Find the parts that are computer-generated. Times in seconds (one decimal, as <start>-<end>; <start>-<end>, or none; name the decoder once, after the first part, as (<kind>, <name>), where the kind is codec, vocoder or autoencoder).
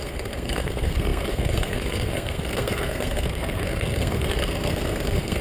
0.0-5.4 (codec, SNAC)